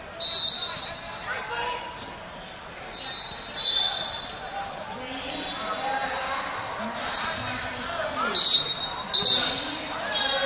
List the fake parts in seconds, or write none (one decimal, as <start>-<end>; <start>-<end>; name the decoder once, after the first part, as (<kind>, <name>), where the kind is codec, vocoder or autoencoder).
none